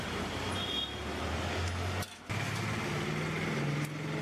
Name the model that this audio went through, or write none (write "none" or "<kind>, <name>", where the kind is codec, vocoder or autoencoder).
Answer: none